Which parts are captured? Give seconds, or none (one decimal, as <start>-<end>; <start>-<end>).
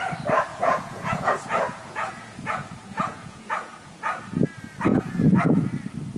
0.0-0.5; 4.2-4.9; 5.4-6.2